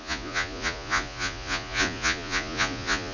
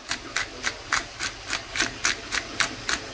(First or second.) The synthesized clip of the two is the first